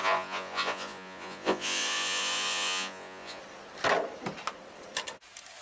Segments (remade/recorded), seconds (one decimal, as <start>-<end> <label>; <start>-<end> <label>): 0.0-3.4 remade; 3.4-5.6 recorded